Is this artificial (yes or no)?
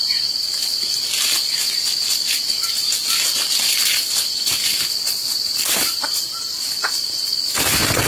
no